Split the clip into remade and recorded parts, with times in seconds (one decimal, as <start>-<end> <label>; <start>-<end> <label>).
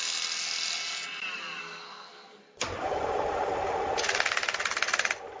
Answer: 0.0-1.6 recorded; 1.6-2.4 remade; 2.4-5.4 recorded